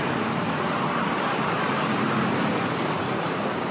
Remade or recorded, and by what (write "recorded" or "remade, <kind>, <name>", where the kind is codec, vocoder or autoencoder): recorded